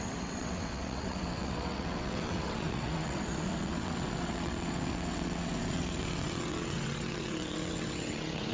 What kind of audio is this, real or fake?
fake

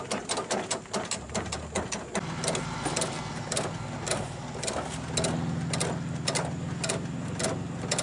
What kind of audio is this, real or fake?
real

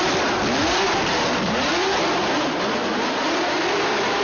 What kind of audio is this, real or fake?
fake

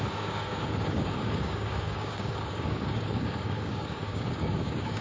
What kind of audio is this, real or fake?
fake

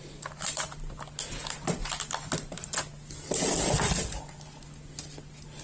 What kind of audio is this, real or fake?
real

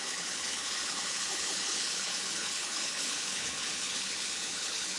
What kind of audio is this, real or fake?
fake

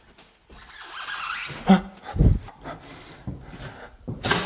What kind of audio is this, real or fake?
real